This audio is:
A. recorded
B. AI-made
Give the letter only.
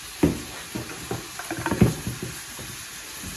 A